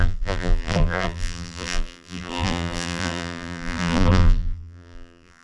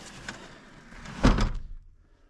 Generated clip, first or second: first